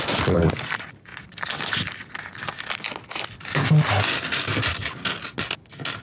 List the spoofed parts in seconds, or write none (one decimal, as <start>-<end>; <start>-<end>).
1.1-1.7